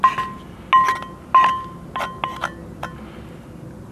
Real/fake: real